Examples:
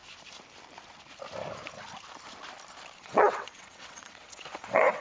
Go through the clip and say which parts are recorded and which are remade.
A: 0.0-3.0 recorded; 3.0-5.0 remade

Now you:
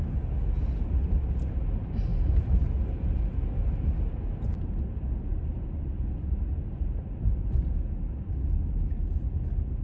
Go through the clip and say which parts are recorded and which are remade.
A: 0.0-9.8 recorded

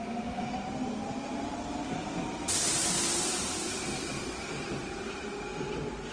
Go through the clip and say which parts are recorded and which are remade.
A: 0.0-6.1 recorded